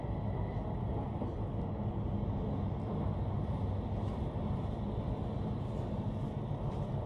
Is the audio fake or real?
real